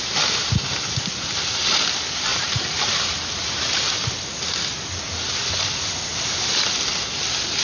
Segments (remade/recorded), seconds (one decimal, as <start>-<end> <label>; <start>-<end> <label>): 0.0-2.3 recorded; 2.3-3.9 remade; 3.9-6.1 recorded; 6.1-6.6 remade; 6.6-7.6 recorded